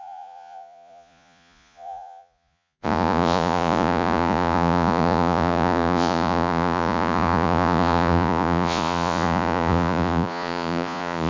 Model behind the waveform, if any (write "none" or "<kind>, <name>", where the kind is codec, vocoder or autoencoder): vocoder, Vocos